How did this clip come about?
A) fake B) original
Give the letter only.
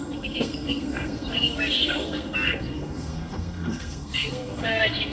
A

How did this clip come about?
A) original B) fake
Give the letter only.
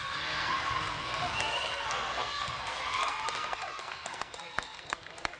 B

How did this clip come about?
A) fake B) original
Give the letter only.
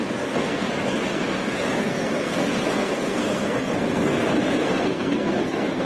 A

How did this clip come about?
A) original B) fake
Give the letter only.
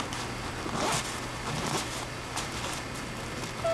A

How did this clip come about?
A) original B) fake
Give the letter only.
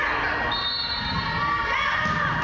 A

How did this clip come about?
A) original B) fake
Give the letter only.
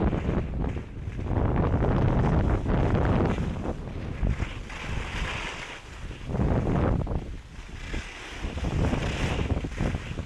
A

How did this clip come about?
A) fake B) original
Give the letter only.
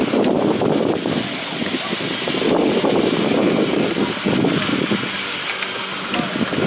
B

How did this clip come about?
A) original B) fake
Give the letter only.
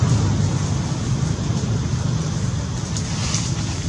A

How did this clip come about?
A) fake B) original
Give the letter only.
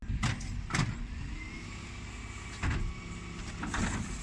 B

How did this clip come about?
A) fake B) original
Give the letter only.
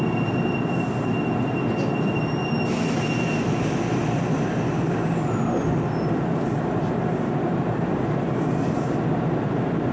B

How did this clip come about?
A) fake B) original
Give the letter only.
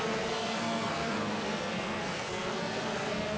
A